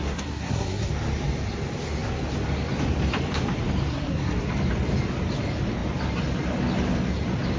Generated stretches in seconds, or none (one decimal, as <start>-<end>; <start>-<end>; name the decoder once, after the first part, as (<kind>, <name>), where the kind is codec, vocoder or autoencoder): 0.0-0.9 (codec, SNAC); 3.9-4.4